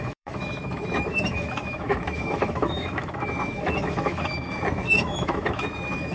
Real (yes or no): no